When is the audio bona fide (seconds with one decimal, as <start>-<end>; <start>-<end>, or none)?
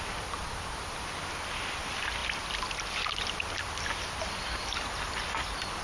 0.0-5.8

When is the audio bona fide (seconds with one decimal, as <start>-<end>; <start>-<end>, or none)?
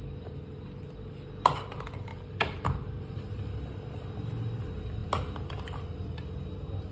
0.0-2.1; 3.3-6.9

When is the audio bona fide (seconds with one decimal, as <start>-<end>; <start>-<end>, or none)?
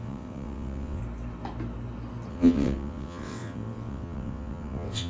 1.0-2.3